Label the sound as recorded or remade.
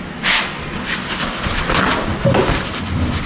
recorded